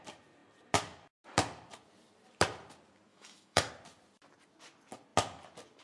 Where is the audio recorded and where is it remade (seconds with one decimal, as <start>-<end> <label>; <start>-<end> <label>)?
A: 0.0-3.1 recorded; 3.1-3.7 remade; 3.7-5.8 recorded